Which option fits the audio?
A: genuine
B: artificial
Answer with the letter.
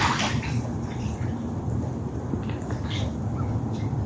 B